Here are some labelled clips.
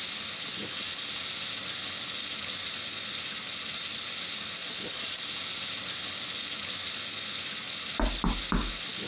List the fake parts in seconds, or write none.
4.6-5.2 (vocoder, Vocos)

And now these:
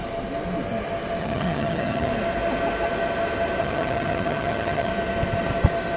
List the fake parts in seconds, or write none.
1.2-2.1 (vocoder, HiFi-GAN); 3.6-4.9

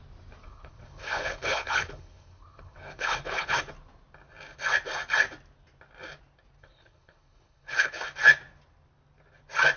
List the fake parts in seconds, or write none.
0.4-3.6 (codec, HILCodec); 6.6-8.0